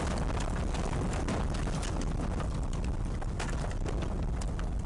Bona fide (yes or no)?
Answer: yes